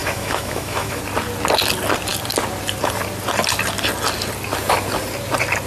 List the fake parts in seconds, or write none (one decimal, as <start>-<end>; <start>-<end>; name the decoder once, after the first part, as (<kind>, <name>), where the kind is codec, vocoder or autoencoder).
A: 0.0-1.0 (autoencoder, DAC-VAE)